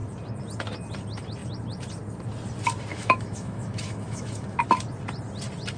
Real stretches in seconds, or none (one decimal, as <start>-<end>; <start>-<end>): 0.0-2.9; 4.6-5.8